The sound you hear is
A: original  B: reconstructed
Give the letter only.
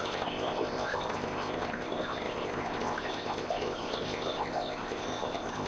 B